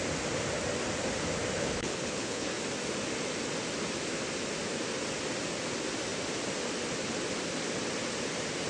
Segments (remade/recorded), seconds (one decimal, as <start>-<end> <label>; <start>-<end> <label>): 0.0-1.6 recorded; 1.6-2.5 remade; 2.5-8.7 recorded